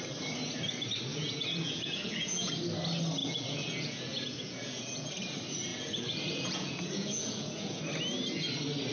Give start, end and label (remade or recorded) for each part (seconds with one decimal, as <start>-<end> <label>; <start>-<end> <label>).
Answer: 0.0-1.1 recorded; 1.1-2.5 remade; 2.5-3.2 recorded; 3.2-5.1 remade; 5.1-5.7 recorded; 5.7-7.8 remade; 7.8-8.9 recorded